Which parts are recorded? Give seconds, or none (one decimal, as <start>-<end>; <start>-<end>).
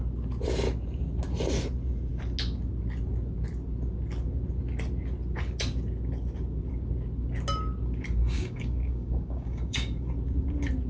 0.0-8.2; 10.1-10.9